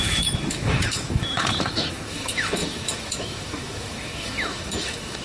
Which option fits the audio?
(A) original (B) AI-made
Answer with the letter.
B